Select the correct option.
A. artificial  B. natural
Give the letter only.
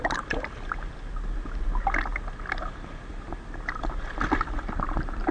B